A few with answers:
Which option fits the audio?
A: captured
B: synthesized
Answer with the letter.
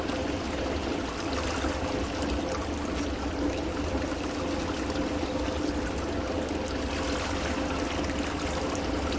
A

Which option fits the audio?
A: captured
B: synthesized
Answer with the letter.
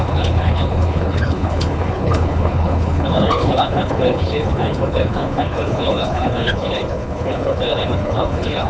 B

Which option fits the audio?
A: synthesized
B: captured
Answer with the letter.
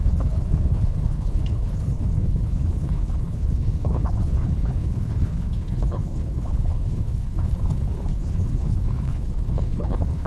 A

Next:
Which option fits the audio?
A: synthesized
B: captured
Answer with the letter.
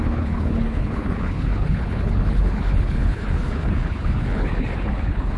A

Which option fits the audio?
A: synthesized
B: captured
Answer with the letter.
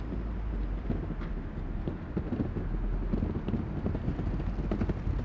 B